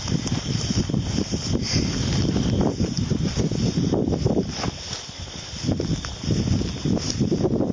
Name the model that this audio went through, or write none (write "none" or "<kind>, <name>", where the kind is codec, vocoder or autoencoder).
none